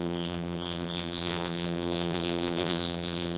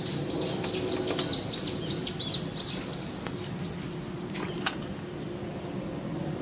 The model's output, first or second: first